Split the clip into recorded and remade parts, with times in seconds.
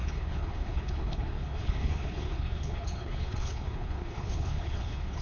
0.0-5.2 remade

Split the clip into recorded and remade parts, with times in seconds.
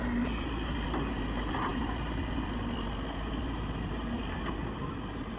0.0-5.4 recorded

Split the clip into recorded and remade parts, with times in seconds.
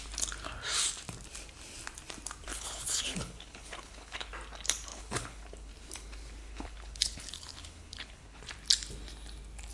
0.0-2.5 recorded; 2.5-4.3 remade; 4.3-4.9 recorded; 4.9-5.7 remade; 5.7-6.4 recorded; 6.4-8.4 remade; 8.4-9.7 recorded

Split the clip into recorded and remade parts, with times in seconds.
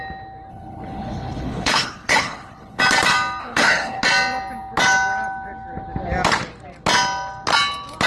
0.0-0.5 recorded; 0.5-2.8 remade; 2.8-3.4 recorded; 3.4-4.0 remade; 4.0-8.1 recorded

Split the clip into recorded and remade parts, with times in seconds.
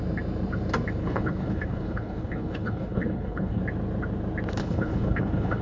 0.0-1.0 recorded; 1.0-3.6 remade; 3.6-4.6 recorded; 4.6-5.6 remade